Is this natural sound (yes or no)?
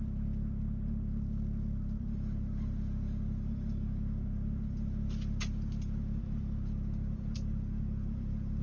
yes